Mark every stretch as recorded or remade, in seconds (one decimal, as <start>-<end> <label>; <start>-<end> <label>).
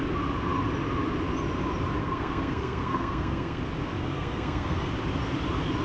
0.0-2.0 recorded; 2.0-3.6 remade; 3.6-4.0 recorded; 4.0-4.9 remade; 4.9-5.8 recorded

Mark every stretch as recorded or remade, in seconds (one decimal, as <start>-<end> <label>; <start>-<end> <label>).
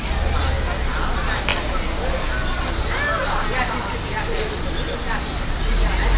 0.0-6.2 recorded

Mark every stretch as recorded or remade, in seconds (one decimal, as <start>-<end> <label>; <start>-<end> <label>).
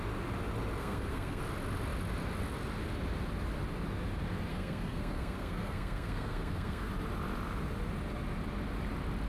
0.0-0.8 recorded; 0.8-1.4 remade; 1.4-4.5 recorded; 4.5-6.9 remade; 6.9-9.3 recorded